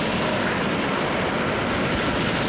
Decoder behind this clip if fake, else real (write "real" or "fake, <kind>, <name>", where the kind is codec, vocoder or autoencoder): real